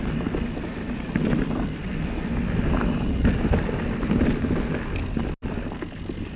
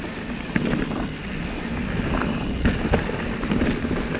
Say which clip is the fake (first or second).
second